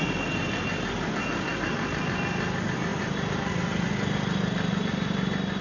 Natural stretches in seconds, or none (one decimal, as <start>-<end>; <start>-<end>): 0.0-2.9; 3.5-5.6